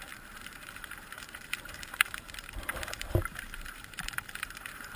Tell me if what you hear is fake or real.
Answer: fake